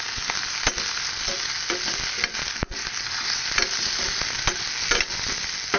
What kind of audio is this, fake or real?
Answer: real